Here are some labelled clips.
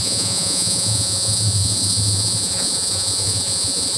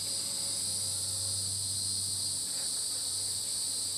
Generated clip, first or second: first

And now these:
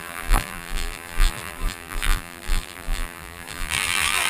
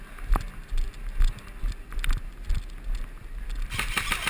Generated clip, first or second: first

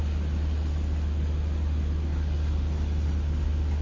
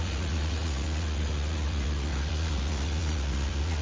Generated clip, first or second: second